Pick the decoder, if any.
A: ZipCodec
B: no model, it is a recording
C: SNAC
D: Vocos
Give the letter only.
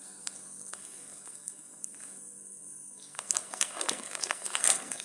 C